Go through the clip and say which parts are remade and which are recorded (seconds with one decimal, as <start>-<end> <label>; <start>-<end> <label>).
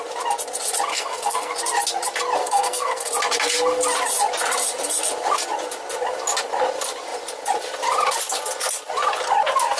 0.0-0.9 recorded; 0.9-1.5 remade; 1.5-2.4 recorded; 2.4-3.1 remade; 3.1-9.8 recorded